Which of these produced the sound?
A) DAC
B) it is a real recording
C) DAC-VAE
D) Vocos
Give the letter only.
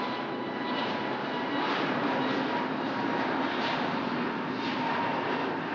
B